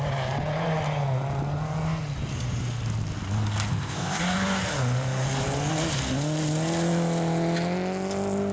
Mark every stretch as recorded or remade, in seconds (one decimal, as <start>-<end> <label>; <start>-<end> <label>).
0.0-3.7 recorded; 3.7-4.2 remade; 4.2-8.5 recorded